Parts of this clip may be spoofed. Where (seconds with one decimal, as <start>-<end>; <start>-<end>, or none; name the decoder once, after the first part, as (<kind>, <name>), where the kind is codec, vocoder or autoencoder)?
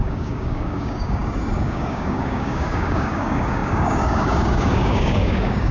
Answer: 0.0-5.7 (codec, DAC)